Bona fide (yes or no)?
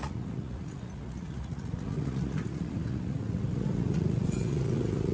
no